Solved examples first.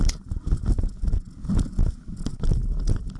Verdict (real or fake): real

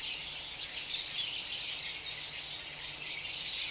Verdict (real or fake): real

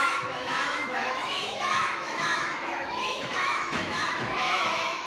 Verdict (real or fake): fake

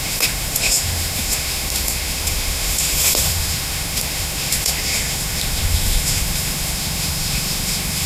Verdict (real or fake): fake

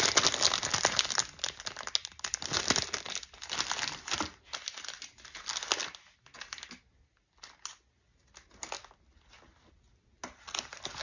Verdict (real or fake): real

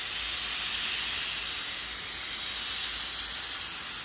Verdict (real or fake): real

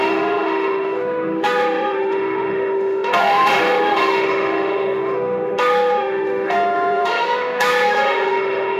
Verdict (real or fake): fake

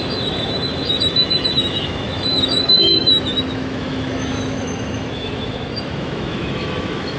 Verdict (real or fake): fake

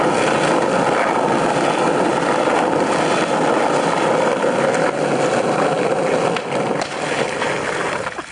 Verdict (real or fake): real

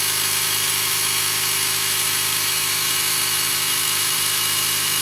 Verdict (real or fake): fake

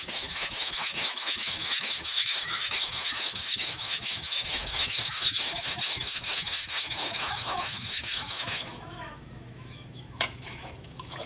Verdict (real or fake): fake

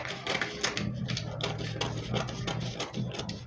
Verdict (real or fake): real